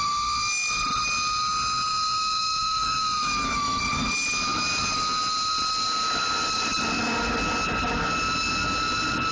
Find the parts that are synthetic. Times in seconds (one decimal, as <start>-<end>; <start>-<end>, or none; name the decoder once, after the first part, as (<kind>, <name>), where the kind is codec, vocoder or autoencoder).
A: 1.9-3.8 (autoencoder, DAC-VAE)